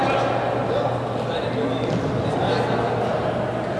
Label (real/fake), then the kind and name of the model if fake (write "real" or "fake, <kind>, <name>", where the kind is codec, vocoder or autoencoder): real